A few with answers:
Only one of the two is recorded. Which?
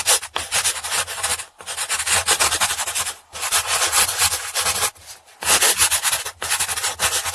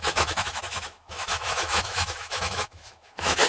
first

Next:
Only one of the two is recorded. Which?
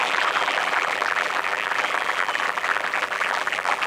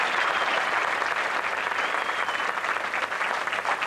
second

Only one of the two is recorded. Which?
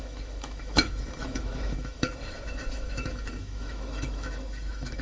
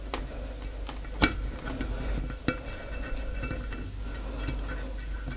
second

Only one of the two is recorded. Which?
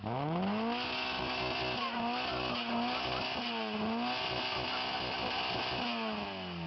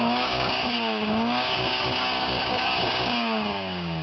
first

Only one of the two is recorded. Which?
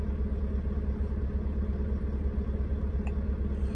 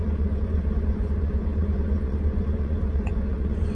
first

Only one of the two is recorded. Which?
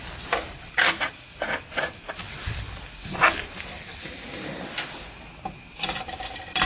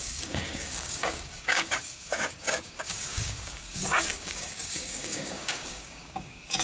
first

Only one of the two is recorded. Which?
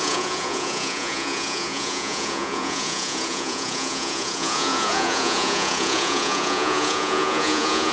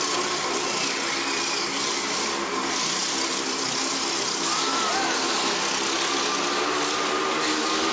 second